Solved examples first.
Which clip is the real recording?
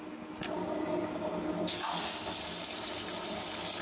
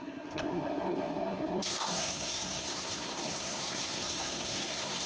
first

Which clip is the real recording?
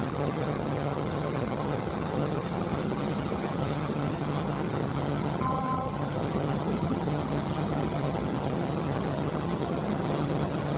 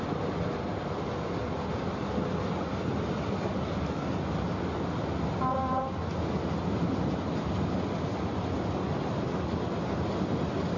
second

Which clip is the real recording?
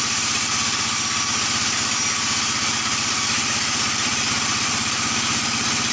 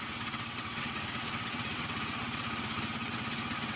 first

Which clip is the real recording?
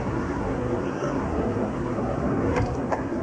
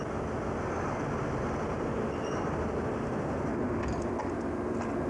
second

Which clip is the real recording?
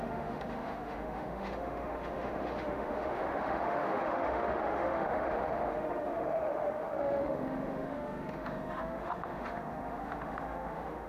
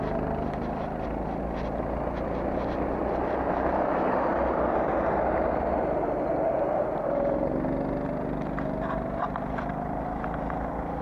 second